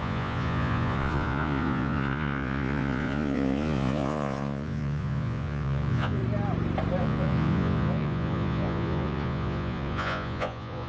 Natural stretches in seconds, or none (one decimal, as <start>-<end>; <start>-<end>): 6.2-7.0